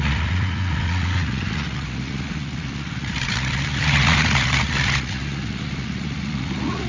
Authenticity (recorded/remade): remade